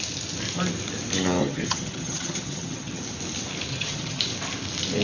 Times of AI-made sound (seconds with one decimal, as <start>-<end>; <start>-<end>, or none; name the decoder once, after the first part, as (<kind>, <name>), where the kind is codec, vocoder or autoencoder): 1.4-3.0 (vocoder, HiFi-GAN); 3.7-4.2

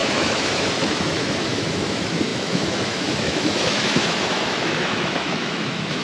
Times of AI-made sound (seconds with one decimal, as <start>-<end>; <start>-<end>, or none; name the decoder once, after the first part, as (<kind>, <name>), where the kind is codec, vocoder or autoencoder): 0.0-6.0 (autoencoder, DAC-VAE)

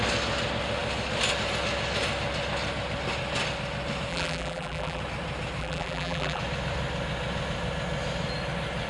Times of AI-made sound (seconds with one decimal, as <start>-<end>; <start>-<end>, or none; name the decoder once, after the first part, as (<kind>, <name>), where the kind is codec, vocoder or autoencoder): 4.1-5.0 (vocoder, BigVGAN v2); 5.6-6.4

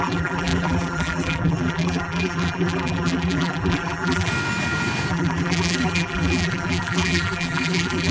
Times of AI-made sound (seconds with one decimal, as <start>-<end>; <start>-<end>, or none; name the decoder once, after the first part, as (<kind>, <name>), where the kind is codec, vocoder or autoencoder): 0.0-4.3 (vocoder, BigVGAN v2); 5.1-8.1

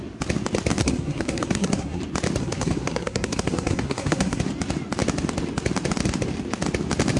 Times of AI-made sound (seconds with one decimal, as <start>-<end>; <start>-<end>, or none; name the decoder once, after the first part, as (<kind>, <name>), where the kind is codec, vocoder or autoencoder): 0.8-2.0 (codec, SNAC); 2.4-4.4

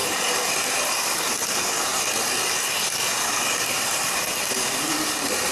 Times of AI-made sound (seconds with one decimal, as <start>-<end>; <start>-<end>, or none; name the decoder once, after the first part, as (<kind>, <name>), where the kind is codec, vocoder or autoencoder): none

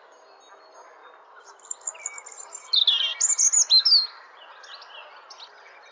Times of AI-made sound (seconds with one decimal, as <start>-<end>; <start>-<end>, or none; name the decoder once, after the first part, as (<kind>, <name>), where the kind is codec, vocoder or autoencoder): none

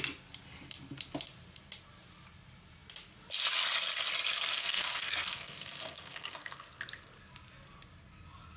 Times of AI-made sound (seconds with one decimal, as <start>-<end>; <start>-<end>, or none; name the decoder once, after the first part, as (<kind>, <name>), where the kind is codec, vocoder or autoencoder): 4.5-6.8 (codec, SNAC)